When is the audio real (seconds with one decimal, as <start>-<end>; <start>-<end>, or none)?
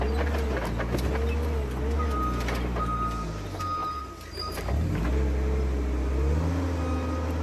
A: 0.0-7.4